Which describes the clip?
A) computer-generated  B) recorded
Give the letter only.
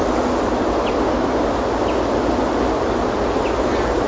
B